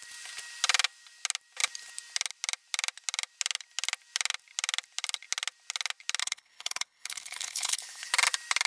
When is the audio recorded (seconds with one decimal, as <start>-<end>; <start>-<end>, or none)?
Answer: 0.0-6.2; 8.1-8.7